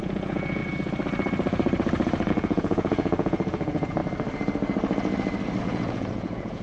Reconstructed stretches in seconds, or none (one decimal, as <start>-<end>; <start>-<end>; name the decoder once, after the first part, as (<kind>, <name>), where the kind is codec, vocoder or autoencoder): 0.0-0.6 (vocoder, Vocos); 2.3-4.0; 5.6-6.6